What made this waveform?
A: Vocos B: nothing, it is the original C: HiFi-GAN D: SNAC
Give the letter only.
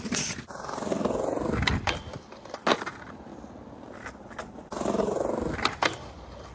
B